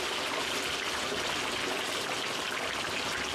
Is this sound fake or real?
real